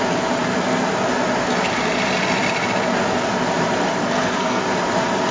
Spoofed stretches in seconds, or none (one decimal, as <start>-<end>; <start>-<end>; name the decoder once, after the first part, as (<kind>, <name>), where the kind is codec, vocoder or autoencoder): 4.0-4.6 (codec, SNAC)